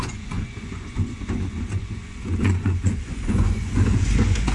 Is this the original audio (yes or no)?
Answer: no